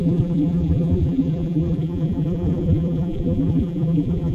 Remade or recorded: remade